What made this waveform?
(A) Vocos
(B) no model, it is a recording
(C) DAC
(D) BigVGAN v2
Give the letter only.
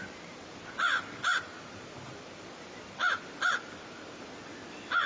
D